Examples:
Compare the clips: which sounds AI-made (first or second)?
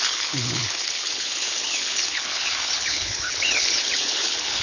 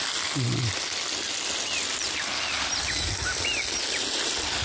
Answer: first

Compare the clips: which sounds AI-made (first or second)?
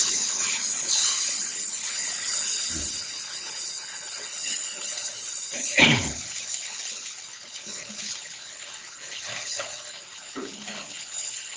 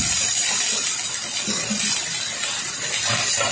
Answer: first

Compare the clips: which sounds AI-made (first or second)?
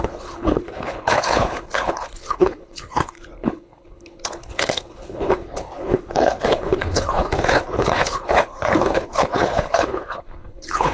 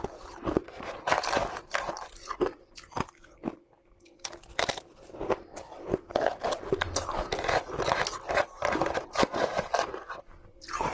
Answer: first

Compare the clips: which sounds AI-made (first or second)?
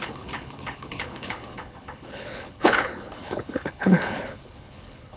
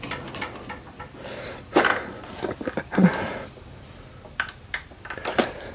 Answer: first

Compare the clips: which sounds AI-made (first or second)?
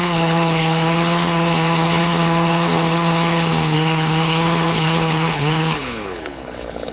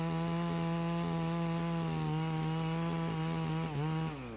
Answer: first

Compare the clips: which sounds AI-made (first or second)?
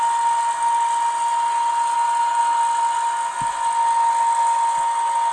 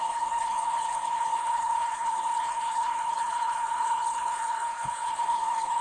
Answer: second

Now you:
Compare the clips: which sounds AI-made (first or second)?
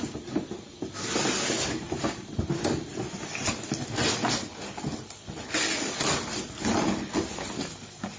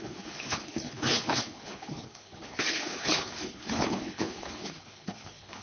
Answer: second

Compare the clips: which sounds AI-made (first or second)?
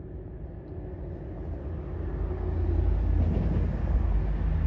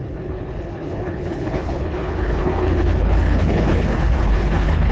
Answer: second